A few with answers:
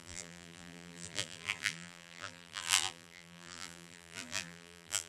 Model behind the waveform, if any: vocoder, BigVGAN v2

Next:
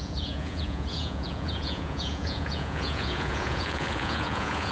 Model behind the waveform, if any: vocoder, Vocos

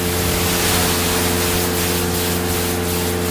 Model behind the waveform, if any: none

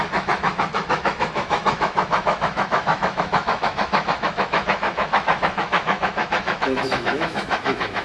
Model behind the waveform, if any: autoencoder, DAC-VAE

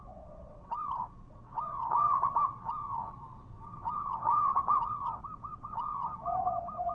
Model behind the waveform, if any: vocoder, WaveNeXt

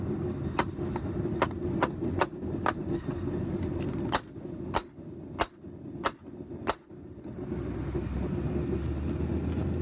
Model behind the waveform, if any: none